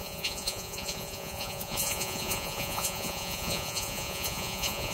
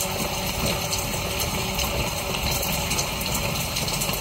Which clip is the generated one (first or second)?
first